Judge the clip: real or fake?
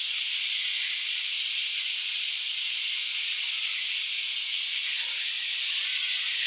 real